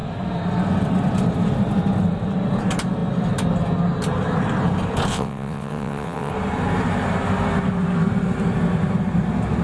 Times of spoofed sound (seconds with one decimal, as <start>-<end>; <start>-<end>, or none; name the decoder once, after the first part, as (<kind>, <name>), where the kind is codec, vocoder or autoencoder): 5.1-6.3 (vocoder, WaveNeXt)